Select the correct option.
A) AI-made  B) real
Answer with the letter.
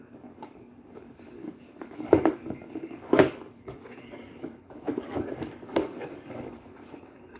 A